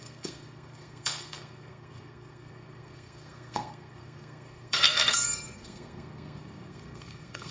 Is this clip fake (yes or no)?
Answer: yes